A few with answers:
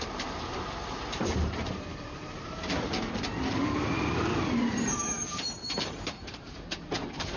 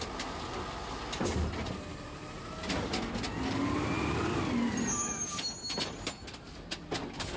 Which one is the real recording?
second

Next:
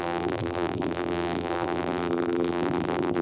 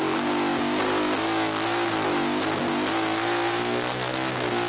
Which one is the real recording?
second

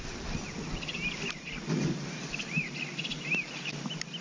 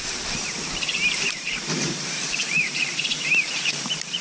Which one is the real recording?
first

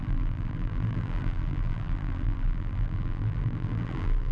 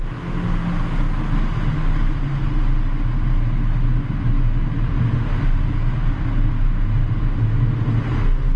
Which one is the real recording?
second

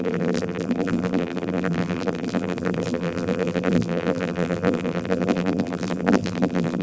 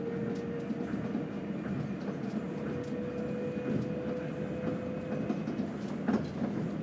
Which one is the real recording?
second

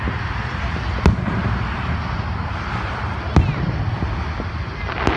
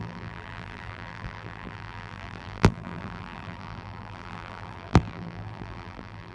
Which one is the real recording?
first